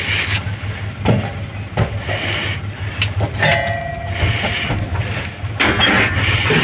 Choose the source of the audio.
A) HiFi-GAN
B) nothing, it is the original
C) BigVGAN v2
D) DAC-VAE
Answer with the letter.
B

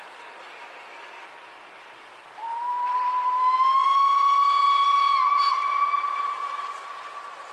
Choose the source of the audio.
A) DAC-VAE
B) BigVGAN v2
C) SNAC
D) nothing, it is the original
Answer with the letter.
D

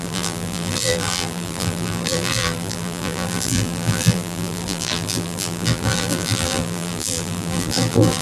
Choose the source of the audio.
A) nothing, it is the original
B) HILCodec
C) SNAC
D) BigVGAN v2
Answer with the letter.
D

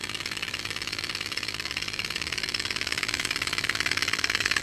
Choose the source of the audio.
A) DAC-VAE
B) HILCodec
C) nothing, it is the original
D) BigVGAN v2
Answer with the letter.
D